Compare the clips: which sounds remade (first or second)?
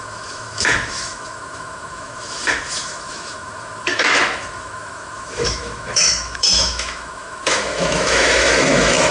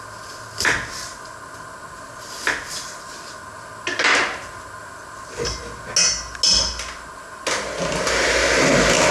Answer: first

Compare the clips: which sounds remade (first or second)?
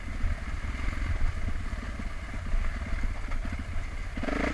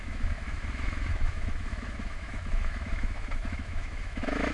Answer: second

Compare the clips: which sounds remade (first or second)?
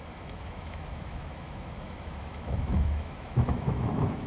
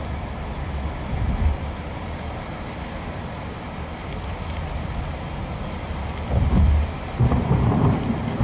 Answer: first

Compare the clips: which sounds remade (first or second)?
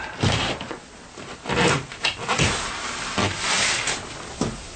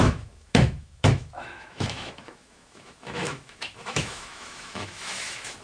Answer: second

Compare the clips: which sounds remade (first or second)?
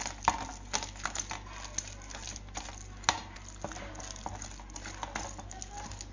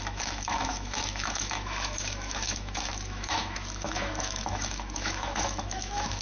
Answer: second